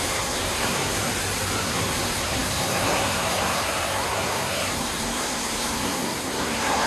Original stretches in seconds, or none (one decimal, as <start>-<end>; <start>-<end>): 1.1-1.6